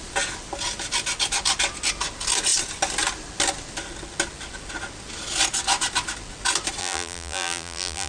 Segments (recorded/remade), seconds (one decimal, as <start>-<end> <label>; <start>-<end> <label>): 0.0-6.8 recorded; 6.8-8.1 remade